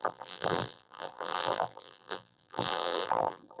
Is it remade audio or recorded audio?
remade